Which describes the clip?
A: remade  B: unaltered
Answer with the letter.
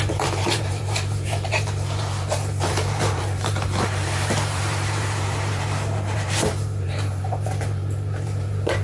A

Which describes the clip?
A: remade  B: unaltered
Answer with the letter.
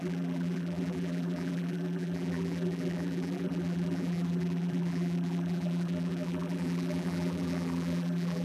A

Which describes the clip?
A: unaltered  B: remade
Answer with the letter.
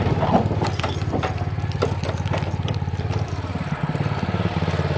A